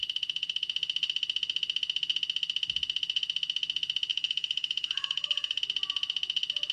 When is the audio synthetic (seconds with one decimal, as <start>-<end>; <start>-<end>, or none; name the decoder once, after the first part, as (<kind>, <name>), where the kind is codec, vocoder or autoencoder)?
4.1-5.6 (autoencoder, DAC-VAE)